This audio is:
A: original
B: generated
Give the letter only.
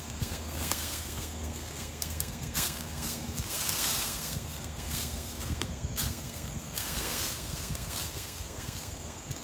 B